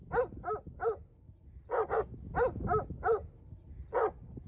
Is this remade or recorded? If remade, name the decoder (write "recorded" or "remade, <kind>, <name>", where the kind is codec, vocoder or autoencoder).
recorded